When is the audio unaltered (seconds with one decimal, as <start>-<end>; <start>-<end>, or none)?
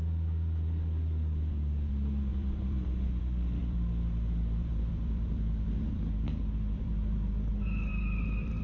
0.0-2.3; 3.2-3.6; 7.5-7.9